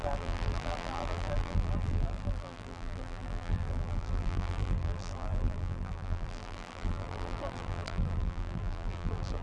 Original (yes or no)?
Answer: no